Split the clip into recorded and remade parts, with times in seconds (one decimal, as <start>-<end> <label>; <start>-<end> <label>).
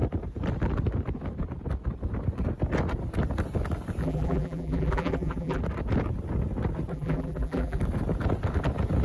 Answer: 0.0-4.0 recorded; 4.0-5.6 remade; 5.6-6.9 recorded; 6.9-7.8 remade; 7.8-9.0 recorded